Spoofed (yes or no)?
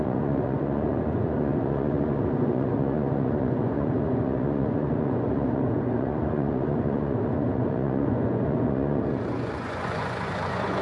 yes